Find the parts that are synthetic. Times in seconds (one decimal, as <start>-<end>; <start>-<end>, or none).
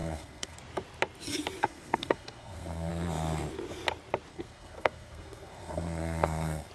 0.0-0.6; 1.6-2.9; 4.3-6.7